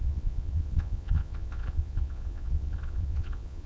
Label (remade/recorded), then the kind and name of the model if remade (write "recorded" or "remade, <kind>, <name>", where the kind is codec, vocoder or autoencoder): remade, vocoder, Vocos